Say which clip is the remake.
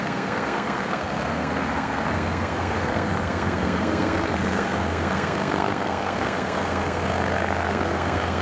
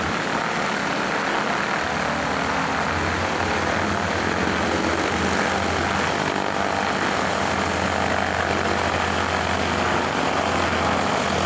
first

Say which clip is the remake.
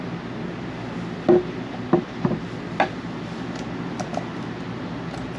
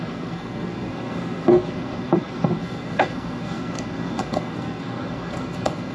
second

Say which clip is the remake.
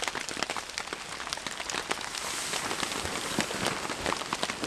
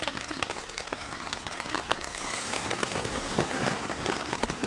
second